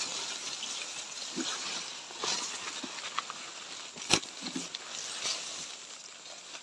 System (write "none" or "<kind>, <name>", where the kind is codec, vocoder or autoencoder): none